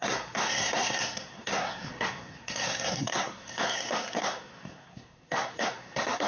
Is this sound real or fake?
fake